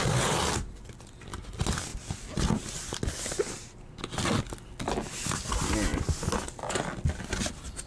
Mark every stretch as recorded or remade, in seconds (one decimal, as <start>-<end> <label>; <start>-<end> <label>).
0.0-7.9 recorded